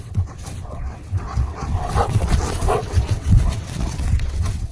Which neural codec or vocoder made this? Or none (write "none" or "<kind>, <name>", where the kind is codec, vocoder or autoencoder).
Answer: vocoder, WaveNeXt